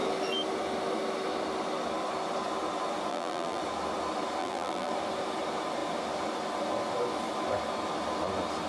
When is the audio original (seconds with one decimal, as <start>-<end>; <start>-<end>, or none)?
0.0-3.1; 3.6-4.4; 4.9-8.7